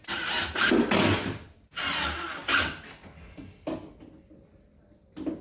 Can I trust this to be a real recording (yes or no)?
yes